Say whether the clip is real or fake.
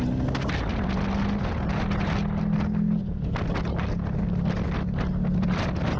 real